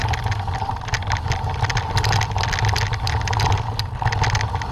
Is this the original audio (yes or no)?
yes